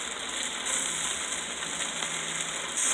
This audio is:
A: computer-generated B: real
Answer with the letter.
B